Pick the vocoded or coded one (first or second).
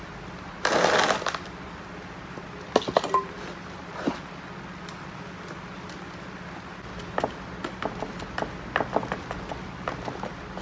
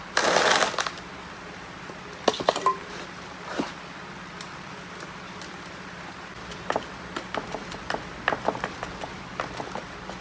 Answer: second